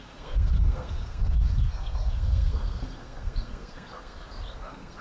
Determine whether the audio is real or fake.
fake